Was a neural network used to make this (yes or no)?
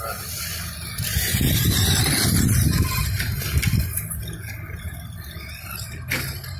no